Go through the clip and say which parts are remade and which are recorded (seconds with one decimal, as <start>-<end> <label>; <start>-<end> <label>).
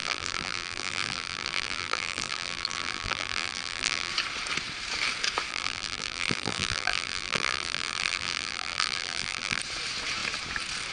0.0-4.1 remade; 4.1-5.5 recorded; 5.5-9.6 remade; 9.6-10.9 recorded